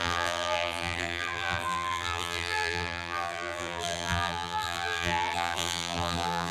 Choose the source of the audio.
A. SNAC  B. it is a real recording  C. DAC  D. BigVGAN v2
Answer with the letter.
D